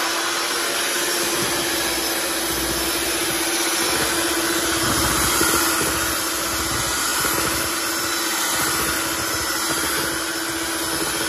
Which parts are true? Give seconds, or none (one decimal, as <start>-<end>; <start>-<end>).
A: 0.0-11.3